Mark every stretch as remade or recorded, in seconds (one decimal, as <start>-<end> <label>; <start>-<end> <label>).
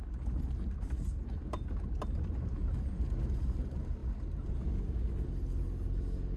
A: 0.0-6.4 recorded